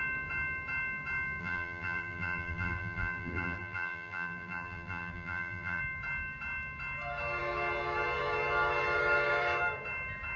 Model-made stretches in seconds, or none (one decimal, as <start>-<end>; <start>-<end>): 1.4-5.8